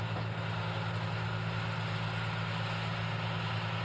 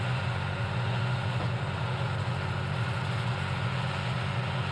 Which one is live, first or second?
first